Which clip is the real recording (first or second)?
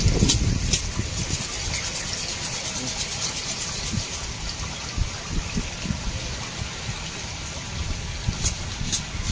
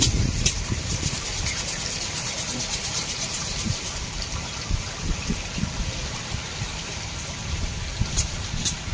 first